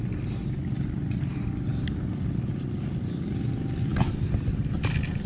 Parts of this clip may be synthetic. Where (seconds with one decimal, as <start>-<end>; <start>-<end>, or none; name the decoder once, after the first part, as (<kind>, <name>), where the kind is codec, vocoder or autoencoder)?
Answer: none